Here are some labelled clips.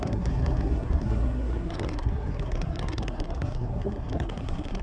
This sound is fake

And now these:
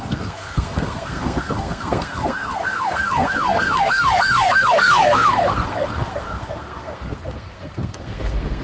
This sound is fake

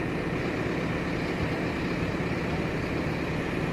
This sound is real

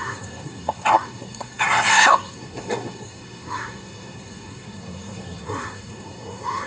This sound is fake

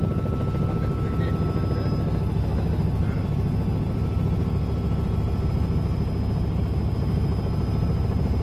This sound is real